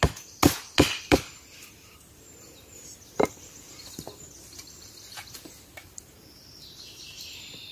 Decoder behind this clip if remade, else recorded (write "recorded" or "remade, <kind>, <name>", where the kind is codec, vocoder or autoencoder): recorded